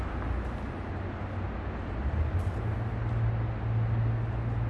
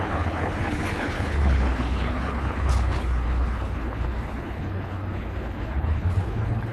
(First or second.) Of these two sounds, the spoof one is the second